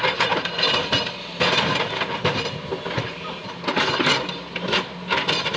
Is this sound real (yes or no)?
yes